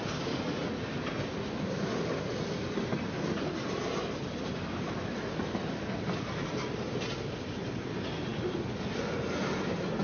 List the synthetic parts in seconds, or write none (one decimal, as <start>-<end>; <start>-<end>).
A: none